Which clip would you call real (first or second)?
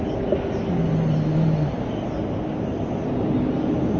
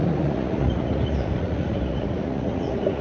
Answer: first